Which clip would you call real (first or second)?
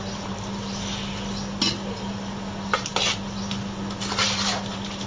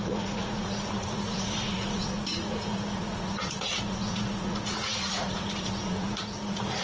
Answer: first